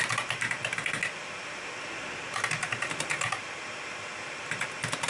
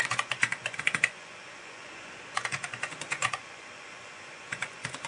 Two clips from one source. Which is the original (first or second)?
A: first